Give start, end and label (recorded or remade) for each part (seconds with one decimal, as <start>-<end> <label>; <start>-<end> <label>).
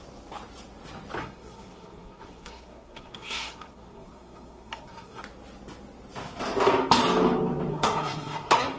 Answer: 0.0-1.2 recorded; 1.2-5.2 remade; 5.2-7.7 recorded; 7.7-8.8 remade